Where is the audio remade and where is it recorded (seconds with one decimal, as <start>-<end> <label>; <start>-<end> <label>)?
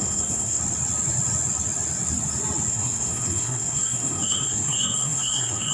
0.0-0.6 remade; 0.6-2.7 recorded; 2.7-5.7 remade